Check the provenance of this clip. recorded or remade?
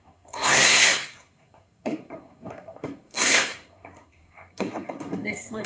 remade